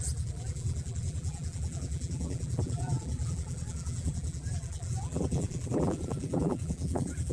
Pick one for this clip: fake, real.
fake